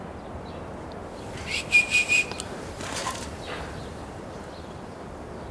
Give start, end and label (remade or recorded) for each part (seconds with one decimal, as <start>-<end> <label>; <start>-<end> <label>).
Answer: 0.0-3.0 recorded; 3.0-4.6 remade; 4.6-5.5 recorded